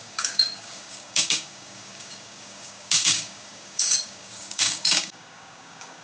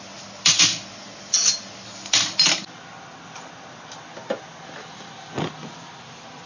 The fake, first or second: first